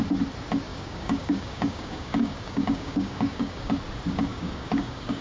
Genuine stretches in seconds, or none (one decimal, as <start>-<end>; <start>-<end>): 0.0-0.7; 3.8-4.3